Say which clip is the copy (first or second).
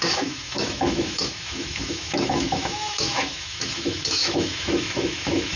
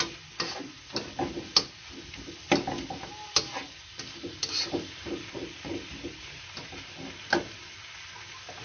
first